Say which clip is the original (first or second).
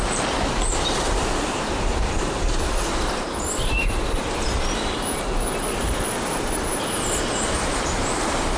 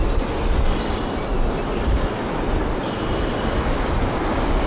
second